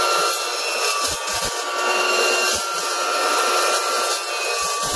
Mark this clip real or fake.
real